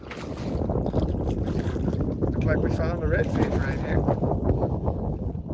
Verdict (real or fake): real